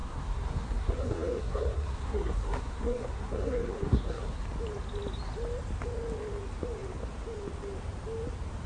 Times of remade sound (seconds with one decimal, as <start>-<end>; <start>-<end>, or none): 0.0-4.4